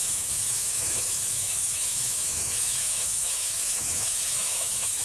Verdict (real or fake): fake